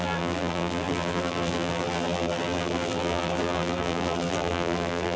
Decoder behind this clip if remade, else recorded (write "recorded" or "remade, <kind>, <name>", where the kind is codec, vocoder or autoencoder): remade, vocoder, BigVGAN v2